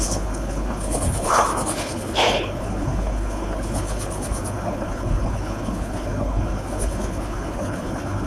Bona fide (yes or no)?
no